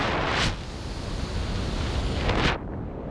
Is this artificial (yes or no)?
no